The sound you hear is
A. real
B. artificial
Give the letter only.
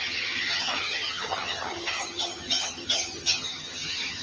B